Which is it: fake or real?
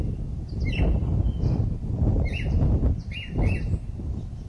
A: fake